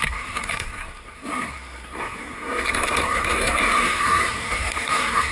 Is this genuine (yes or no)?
no